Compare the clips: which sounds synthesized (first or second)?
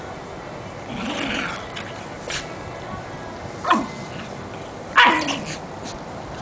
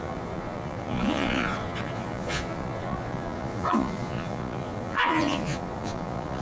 second